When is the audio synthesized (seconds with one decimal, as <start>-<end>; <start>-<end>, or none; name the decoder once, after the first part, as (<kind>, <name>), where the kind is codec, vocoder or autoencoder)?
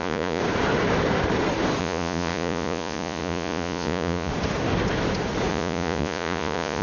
0.0-0.4 (vocoder, Vocos); 1.8-4.3; 5.5-6.8